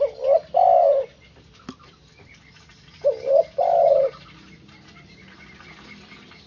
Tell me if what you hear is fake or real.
real